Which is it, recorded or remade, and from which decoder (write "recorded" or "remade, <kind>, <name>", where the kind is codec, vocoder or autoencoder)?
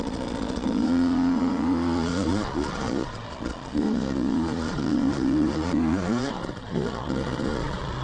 remade, vocoder, Vocos